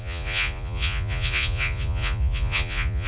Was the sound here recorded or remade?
remade